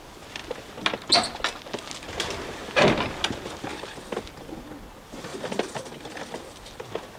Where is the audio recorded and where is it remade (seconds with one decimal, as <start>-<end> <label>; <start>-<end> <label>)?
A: 0.0-3.7 recorded; 3.7-4.2 remade; 4.2-5.3 recorded; 5.3-6.8 remade; 6.8-7.2 recorded